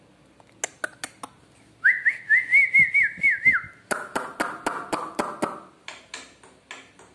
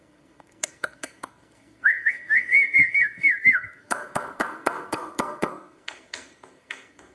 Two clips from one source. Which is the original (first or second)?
first